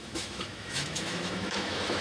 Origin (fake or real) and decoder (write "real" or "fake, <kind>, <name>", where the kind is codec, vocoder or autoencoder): fake, autoencoder, DAC-VAE